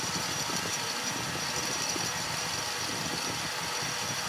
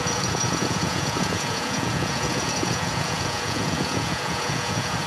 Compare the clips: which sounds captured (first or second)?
first